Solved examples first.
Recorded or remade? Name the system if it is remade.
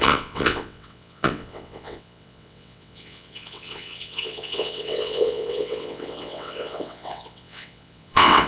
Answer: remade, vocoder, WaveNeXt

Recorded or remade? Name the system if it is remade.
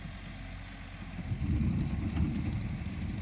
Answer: recorded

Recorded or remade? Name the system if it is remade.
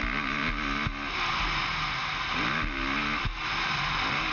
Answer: recorded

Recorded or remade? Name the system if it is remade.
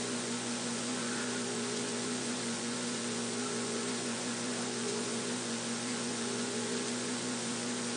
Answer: remade, vocoder, Vocos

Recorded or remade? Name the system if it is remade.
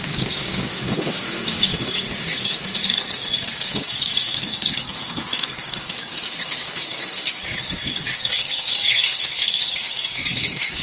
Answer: remade, codec, DAC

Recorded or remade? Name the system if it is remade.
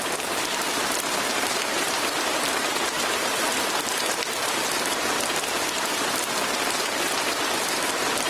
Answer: remade, vocoder, BigVGAN v2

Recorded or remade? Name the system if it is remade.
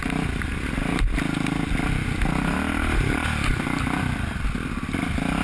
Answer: recorded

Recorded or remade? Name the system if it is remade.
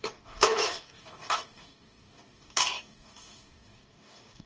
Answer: remade, codec, DAC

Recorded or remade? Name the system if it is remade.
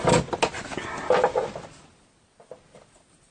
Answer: recorded